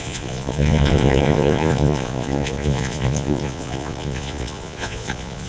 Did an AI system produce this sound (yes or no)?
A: yes